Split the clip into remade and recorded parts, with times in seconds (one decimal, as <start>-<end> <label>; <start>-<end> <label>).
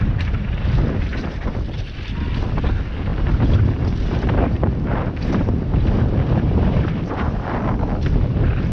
0.0-1.1 recorded; 1.1-1.8 remade; 1.8-3.1 recorded; 3.1-7.2 remade; 7.2-8.7 recorded